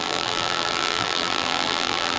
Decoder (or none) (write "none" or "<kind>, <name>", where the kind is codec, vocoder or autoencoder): vocoder, BigVGAN v2